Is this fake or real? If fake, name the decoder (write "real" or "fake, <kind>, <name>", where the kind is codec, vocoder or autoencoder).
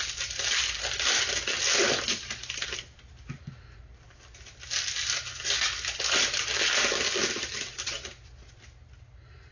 real